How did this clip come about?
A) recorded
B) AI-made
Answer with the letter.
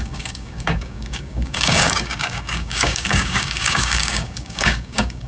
B